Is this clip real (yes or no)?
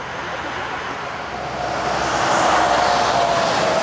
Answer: yes